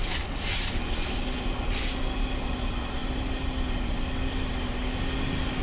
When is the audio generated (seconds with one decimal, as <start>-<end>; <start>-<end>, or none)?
none